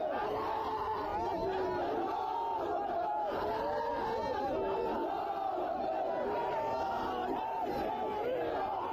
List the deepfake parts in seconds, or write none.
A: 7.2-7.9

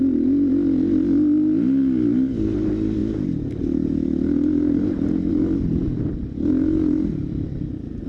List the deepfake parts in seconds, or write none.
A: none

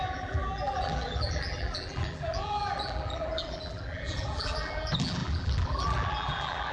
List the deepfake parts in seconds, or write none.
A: 0.0-6.7

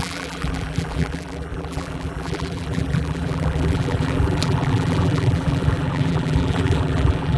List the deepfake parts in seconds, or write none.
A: 0.0-7.4

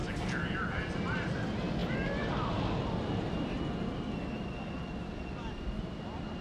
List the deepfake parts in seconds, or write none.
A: none

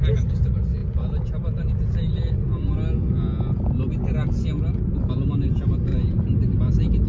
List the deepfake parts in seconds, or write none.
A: 5.9-6.6